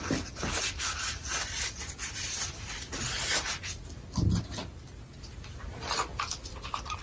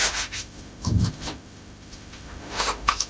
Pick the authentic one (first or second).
first